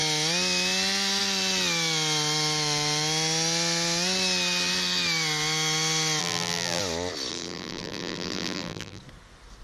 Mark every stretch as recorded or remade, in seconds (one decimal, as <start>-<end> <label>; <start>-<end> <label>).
0.0-6.2 recorded; 6.2-6.8 remade; 6.8-7.3 recorded; 7.3-9.0 remade; 9.0-9.6 recorded